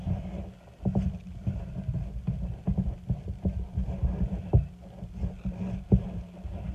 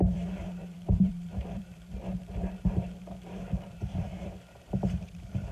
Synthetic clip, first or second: second